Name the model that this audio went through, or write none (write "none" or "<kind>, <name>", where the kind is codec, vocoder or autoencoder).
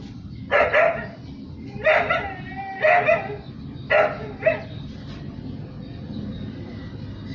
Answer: none